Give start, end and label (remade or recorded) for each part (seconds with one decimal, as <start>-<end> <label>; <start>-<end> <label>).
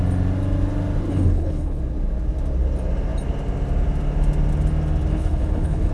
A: 0.0-1.1 recorded; 1.1-1.8 remade; 1.8-5.1 recorded; 5.1-5.9 remade